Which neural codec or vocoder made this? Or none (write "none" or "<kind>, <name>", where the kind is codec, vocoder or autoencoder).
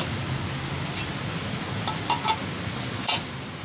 none